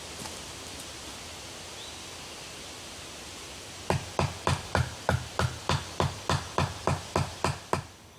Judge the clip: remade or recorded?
recorded